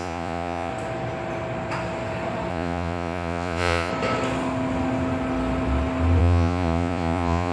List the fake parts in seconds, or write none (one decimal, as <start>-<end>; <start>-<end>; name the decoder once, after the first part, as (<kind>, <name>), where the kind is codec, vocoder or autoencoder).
0.0-0.7 (vocoder, Vocos); 2.5-3.9; 6.2-7.5